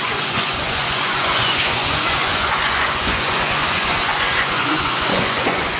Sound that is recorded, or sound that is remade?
remade